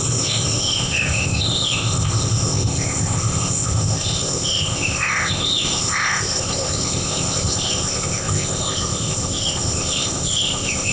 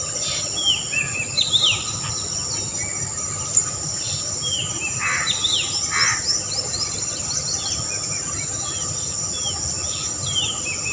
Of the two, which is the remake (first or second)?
first